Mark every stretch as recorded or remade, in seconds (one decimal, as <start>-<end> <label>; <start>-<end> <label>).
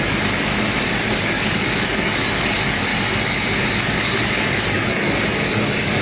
0.0-0.5 remade; 0.5-1.1 recorded; 1.1-2.9 remade; 2.9-3.8 recorded; 3.8-6.0 remade